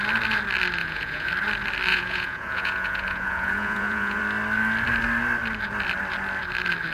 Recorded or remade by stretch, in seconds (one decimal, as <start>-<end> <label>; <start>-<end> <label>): 0.0-0.8 recorded; 0.8-1.3 remade; 1.3-1.9 recorded; 1.9-4.2 remade; 4.2-6.9 recorded